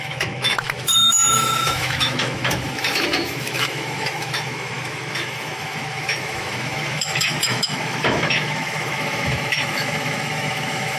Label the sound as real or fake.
fake